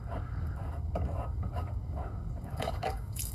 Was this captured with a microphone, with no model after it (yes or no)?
no